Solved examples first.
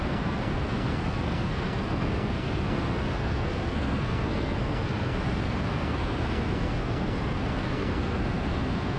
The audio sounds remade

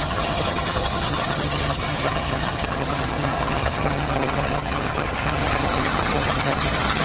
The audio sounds remade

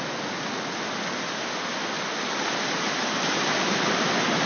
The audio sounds recorded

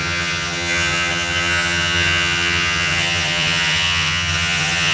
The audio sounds remade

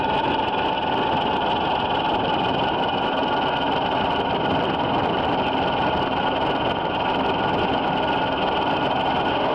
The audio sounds recorded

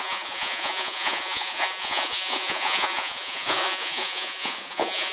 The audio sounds remade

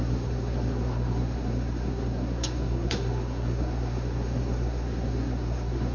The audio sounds remade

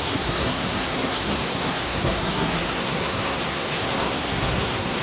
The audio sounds remade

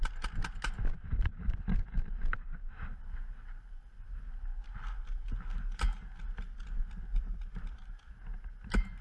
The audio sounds recorded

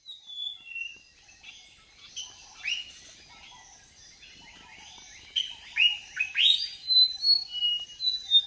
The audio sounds recorded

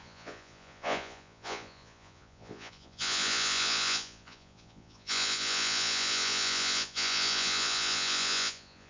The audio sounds remade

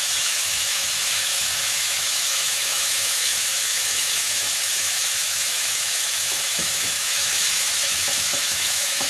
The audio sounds remade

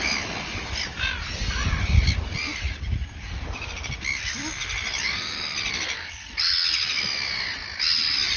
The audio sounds recorded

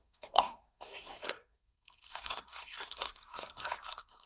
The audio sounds remade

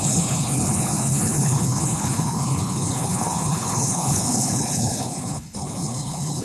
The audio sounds remade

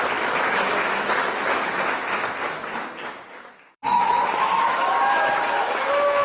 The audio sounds remade